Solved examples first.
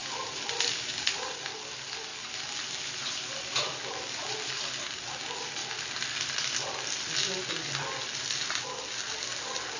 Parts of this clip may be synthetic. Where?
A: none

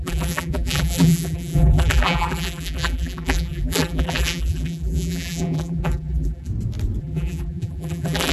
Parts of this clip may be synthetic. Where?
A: 0.0-6.5; 7.0-8.3

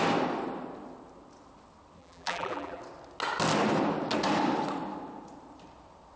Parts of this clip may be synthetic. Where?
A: 2.0-2.8

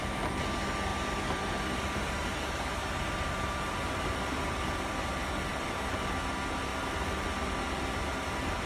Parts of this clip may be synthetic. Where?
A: 0.9-4.0

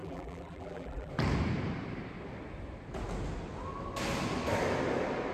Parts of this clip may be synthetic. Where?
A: 0.0-1.1